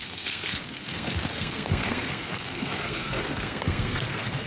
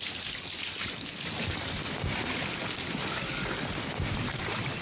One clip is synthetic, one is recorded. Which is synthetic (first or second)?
first